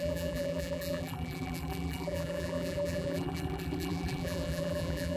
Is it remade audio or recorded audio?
remade